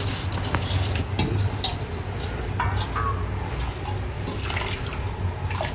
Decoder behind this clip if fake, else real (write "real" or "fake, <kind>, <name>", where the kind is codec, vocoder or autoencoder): real